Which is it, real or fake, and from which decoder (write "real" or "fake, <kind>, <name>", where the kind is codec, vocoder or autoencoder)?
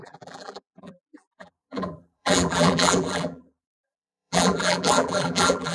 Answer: fake, vocoder, BigVGAN v2